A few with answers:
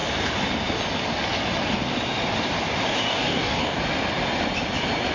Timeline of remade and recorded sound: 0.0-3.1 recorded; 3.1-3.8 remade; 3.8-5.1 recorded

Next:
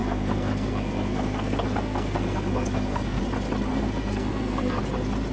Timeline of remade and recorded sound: 0.0-3.2 remade; 3.2-3.7 recorded; 3.7-4.8 remade; 4.8-5.3 recorded

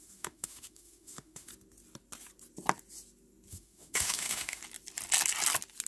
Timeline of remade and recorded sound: 0.0-1.5 remade; 1.5-3.5 recorded; 3.5-4.6 remade; 4.6-5.9 recorded

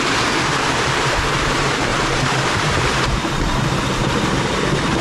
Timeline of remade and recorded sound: 0.0-1.9 recorded; 1.9-3.3 remade; 3.3-5.0 recorded